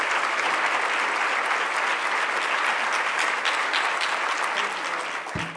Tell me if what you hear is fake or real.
real